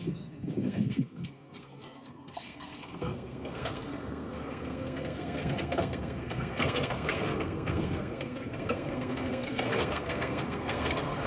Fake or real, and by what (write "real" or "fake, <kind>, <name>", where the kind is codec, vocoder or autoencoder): fake, codec, SNAC